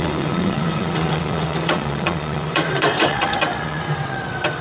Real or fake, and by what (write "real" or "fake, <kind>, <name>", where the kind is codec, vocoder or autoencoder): fake, vocoder, WaveNeXt